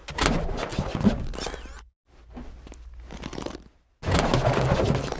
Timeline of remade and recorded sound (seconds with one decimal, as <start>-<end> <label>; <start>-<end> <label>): 0.0-5.2 recorded